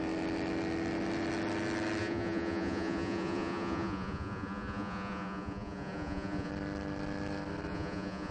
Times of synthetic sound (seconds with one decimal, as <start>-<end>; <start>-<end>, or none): 2.0-6.5; 7.7-8.3